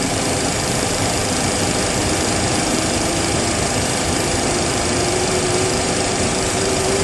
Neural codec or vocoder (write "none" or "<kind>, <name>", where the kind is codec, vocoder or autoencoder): vocoder, BigVGAN v2